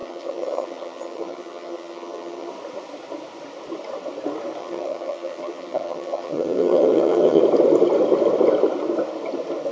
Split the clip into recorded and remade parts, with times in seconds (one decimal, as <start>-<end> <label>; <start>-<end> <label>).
0.0-2.5 remade; 2.5-4.6 recorded; 4.6-7.4 remade; 7.4-9.7 recorded

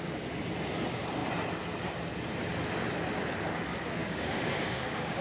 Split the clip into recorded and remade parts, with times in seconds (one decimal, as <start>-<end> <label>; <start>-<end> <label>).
0.0-4.0 recorded; 4.0-5.2 remade